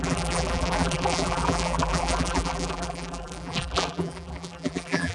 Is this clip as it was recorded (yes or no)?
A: no